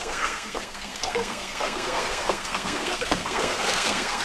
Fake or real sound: fake